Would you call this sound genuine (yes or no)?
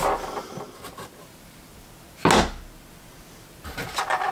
yes